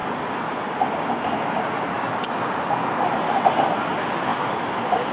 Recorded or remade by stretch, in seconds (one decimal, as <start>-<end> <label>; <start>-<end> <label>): 0.0-5.1 recorded